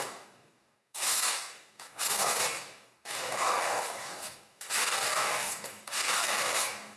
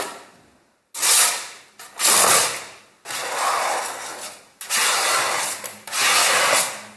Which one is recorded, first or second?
second